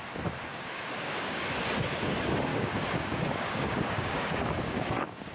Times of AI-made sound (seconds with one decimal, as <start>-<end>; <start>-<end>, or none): 0.5-1.4; 2.5-5.3